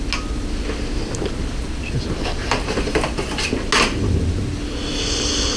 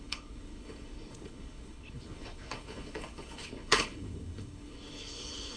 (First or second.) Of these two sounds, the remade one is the second